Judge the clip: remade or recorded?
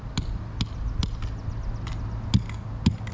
recorded